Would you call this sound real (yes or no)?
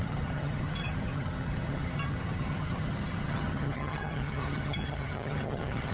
no